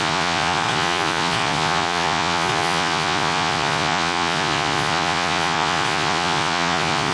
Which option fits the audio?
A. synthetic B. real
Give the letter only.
A